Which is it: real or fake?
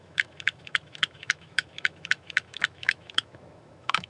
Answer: fake